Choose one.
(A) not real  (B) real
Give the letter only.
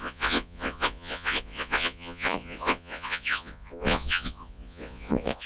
A